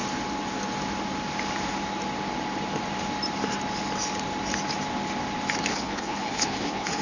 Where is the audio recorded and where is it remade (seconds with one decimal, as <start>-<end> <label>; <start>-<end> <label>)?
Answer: 0.0-5.7 recorded; 5.7-7.0 remade

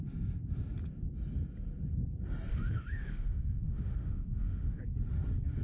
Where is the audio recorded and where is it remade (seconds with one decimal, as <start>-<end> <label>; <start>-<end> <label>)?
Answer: 0.0-2.5 recorded; 2.5-4.8 remade; 4.8-5.6 recorded

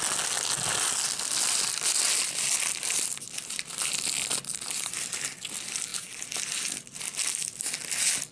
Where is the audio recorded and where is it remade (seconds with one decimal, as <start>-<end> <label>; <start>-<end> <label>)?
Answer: 0.0-8.3 recorded